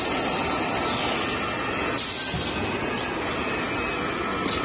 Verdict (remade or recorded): recorded